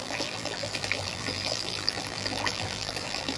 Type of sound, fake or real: fake